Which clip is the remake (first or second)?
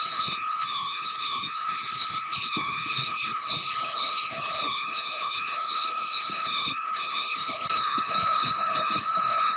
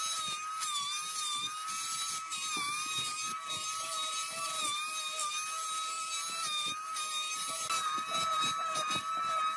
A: first